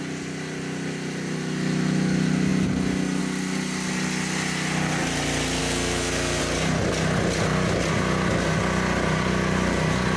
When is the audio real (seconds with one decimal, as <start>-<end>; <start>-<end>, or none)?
0.0-5.6; 6.4-10.2